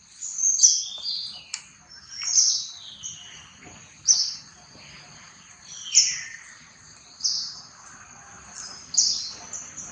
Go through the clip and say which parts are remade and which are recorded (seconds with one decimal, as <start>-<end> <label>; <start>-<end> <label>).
0.0-6.0 recorded; 6.0-8.2 remade; 8.2-9.9 recorded